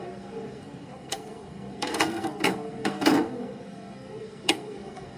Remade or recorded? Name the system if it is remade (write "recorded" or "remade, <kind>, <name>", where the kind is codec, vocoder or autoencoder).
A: remade, codec, SNAC